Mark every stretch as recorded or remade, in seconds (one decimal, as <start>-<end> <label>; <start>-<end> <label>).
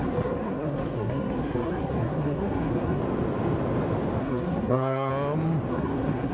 0.0-3.0 remade; 3.0-4.2 recorded; 4.2-5.1 remade; 5.1-5.7 recorded; 5.7-6.3 remade